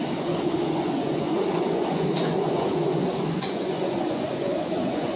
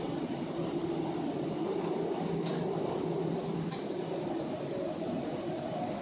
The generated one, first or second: first